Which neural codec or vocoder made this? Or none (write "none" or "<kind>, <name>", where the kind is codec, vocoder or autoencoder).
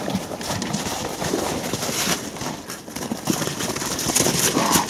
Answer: none